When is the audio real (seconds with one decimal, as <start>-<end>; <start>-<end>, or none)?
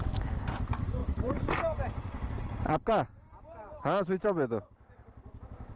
0.0-1.0; 3.8-5.8